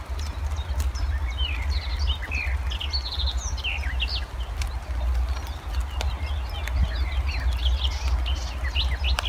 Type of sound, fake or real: real